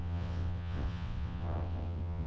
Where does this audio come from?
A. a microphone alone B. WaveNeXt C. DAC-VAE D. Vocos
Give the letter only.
B